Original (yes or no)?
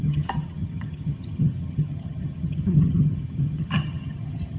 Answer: no